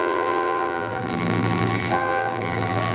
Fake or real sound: fake